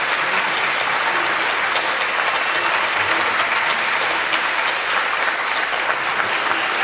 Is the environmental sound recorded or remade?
recorded